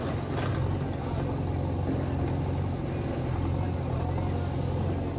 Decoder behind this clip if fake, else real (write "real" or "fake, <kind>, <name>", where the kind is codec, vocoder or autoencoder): real